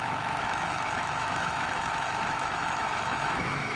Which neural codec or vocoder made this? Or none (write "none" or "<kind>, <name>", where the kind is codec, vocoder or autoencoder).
autoencoder, DAC-VAE